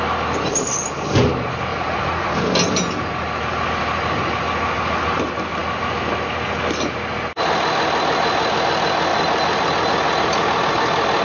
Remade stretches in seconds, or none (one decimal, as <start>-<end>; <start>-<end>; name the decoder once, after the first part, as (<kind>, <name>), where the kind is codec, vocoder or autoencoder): 1.7-2.3 (vocoder, Vocos)